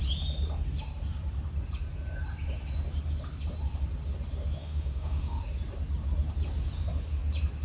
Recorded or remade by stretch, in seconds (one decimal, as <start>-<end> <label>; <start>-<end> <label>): 0.0-4.6 recorded; 4.6-5.4 remade; 5.4-7.6 recorded